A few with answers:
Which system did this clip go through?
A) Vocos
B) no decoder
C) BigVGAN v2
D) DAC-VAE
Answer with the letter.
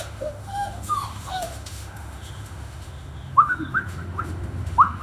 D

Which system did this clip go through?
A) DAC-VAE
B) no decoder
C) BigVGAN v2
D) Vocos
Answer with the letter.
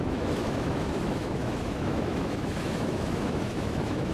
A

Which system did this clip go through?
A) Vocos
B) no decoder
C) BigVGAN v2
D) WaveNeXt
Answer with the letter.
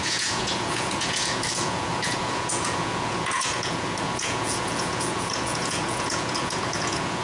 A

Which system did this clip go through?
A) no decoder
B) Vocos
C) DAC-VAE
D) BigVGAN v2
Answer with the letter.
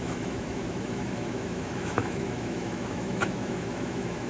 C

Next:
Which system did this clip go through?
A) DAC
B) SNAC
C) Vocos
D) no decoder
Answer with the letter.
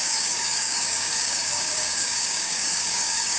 A